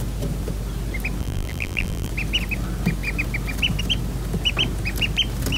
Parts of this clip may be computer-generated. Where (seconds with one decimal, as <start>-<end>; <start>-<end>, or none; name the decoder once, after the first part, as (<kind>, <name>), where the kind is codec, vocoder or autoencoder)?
1.2-2.1 (vocoder, BigVGAN v2)

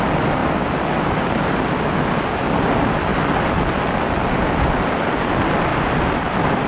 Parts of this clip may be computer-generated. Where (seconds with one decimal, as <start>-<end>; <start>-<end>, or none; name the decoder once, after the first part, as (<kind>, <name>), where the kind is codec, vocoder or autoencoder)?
5.7-6.7 (vocoder, BigVGAN v2)

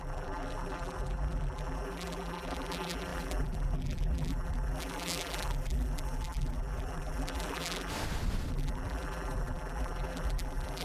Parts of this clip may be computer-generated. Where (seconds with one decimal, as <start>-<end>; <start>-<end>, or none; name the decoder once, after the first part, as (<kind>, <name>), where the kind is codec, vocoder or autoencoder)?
0.0-7.9 (vocoder, BigVGAN v2); 8.5-10.8

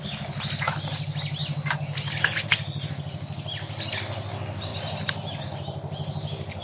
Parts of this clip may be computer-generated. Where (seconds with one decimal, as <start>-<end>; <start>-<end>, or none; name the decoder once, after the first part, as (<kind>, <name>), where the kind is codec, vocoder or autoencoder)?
none

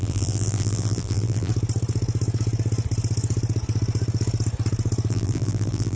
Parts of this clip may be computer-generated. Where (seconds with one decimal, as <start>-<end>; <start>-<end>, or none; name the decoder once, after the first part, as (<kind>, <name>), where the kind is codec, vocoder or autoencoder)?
0.0-1.5 (vocoder, BigVGAN v2); 5.1-6.0

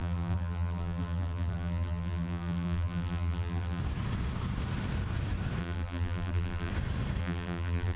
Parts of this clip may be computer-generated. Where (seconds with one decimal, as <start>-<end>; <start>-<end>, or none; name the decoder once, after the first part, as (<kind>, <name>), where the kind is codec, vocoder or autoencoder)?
0.0-3.8 (vocoder, BigVGAN v2); 5.6-6.7; 7.2-8.0

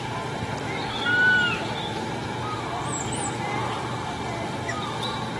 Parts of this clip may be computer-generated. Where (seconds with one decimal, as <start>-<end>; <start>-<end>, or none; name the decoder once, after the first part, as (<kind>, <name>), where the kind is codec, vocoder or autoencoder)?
3.6-5.0 (vocoder, BigVGAN v2)

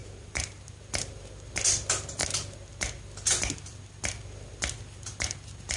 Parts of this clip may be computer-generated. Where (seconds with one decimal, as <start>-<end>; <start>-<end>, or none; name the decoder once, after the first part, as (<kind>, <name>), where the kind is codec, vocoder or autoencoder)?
0.0-0.6 (vocoder, BigVGAN v2)